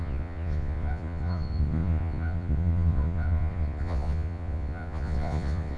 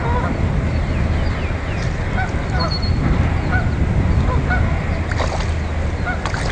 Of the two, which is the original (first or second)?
second